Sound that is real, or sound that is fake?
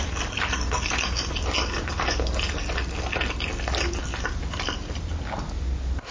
real